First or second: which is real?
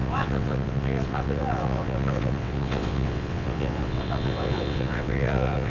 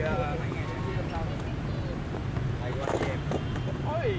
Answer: second